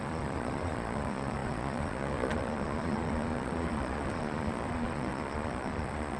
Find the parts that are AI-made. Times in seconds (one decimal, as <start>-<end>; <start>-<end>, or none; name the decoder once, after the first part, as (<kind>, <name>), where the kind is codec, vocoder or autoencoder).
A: 0.0-6.2 (vocoder, Vocos)